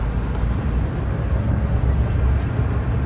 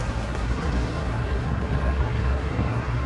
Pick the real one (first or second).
first